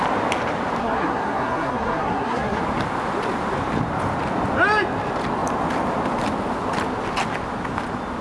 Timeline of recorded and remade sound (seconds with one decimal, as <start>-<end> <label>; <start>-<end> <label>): 0.0-0.8 recorded; 0.8-2.6 remade; 2.6-8.2 recorded